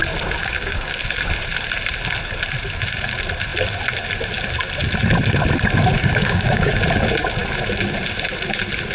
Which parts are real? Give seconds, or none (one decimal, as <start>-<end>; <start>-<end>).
0.0-0.4; 1.0-6.0; 6.7-8.9